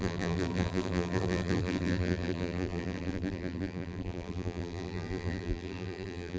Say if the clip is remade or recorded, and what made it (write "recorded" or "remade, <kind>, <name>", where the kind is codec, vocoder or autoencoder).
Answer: remade, vocoder, BigVGAN v2